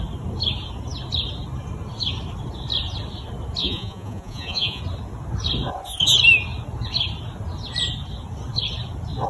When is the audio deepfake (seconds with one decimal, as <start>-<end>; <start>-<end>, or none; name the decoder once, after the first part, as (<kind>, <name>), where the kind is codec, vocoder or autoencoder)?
3.6-4.8 (vocoder, Vocos)